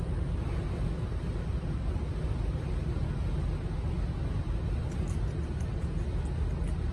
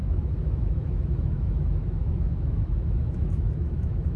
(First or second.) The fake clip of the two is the second